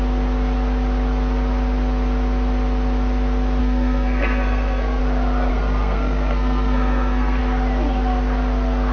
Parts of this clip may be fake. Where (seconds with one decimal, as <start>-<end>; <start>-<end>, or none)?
3.6-5.0; 5.5-7.4